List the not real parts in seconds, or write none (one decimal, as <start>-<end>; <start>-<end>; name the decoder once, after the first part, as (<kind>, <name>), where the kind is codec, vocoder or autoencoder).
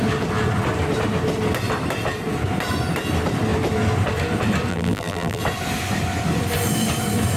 4.7-5.4 (vocoder, BigVGAN v2)